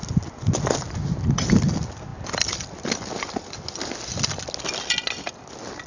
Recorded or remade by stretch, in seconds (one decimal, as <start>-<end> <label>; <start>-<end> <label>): 0.0-5.9 recorded